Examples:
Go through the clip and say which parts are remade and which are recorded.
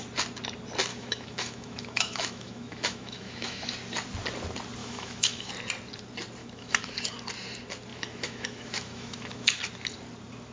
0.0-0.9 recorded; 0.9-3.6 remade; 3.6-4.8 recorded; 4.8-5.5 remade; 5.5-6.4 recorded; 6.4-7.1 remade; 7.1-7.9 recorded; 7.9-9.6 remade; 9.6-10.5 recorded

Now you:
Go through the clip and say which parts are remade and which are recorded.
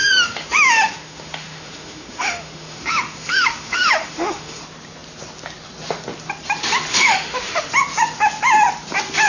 0.0-4.6 remade; 4.6-6.9 recorded; 6.9-7.7 remade; 7.7-9.3 recorded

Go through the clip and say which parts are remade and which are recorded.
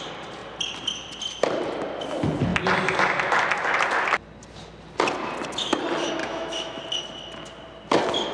0.0-6.2 recorded; 6.2-6.8 remade; 6.8-8.3 recorded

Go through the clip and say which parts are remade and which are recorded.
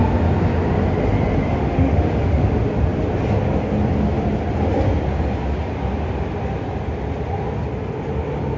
0.0-1.6 recorded; 1.6-2.4 remade; 2.4-8.6 recorded